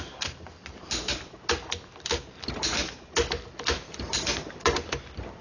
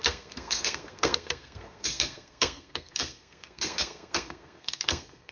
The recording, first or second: first